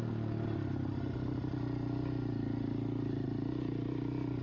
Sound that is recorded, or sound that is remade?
recorded